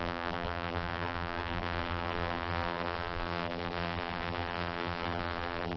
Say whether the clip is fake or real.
fake